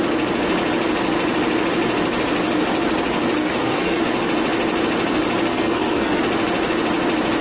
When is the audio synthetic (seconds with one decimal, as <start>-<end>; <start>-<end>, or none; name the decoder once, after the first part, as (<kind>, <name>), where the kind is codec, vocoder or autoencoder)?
3.4-4.0 (codec, SNAC); 5.5-6.2